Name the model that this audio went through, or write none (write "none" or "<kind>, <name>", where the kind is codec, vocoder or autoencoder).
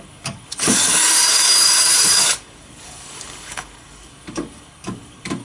codec, DAC